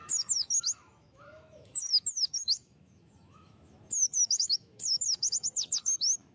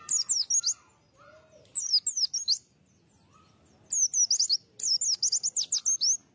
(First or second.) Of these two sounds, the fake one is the first